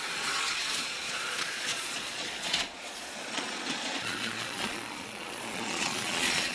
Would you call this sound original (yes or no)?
no